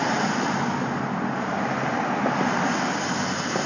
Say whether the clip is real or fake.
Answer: real